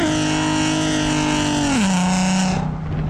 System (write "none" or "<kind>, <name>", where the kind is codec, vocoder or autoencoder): none